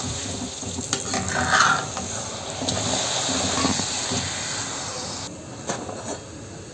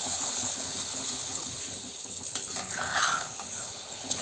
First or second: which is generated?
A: second